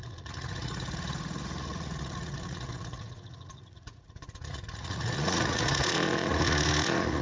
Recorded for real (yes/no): no